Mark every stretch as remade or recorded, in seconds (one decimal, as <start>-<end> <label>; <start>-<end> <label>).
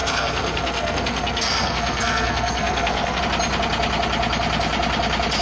0.0-3.2 remade; 3.2-5.4 recorded